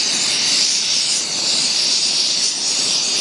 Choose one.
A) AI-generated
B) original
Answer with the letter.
A